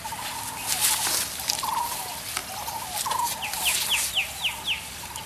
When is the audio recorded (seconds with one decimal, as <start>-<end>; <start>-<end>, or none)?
0.0-5.3